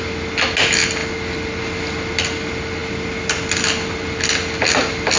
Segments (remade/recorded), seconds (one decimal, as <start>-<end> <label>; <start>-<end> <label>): 0.0-5.2 recorded